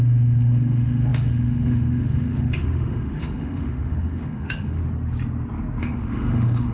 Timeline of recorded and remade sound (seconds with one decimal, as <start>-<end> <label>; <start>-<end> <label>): 0.0-4.8 remade; 4.8-5.8 recorded; 5.8-6.7 remade